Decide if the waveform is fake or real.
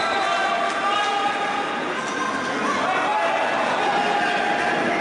real